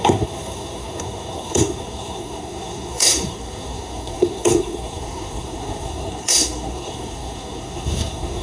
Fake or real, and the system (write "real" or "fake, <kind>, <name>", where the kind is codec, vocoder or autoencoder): fake, codec, SNAC